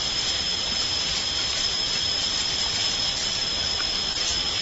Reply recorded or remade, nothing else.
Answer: remade